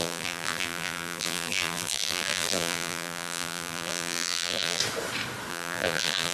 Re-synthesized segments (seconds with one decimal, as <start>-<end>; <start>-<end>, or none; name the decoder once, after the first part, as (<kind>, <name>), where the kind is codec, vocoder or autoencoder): 0.0-4.8 (vocoder, BigVGAN v2); 5.5-6.3